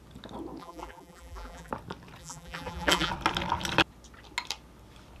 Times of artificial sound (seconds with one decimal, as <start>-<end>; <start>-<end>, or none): 0.6-1.7; 2.2-3.1